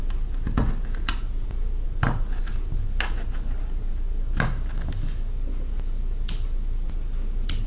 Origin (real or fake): real